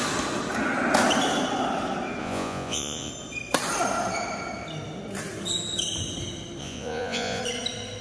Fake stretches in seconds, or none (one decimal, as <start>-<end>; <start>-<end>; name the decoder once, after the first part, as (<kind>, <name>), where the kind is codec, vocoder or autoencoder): 2.2-3.1 (vocoder, Vocos); 6.6-7.4